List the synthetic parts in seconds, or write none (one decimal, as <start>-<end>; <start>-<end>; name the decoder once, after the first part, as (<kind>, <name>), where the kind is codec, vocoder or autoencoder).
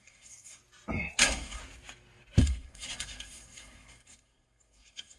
0.0-0.6 (codec, SNAC); 1.2-1.6; 2.4-5.2